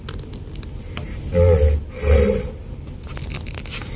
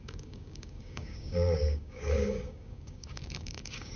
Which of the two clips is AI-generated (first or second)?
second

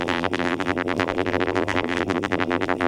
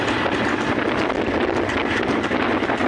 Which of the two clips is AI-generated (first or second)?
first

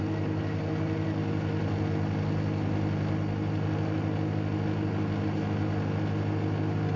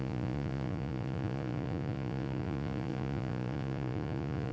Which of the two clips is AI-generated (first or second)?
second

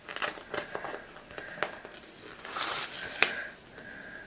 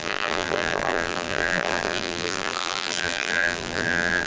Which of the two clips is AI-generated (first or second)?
second